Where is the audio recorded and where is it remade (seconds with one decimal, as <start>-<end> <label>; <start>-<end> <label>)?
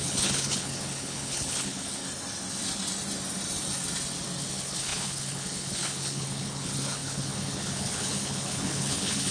0.0-2.0 remade; 2.0-4.4 recorded; 4.4-9.3 remade